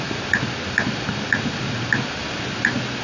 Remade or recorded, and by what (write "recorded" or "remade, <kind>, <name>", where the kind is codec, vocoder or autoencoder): recorded